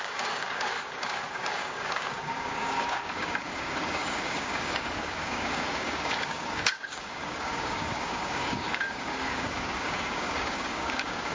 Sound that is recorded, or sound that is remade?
remade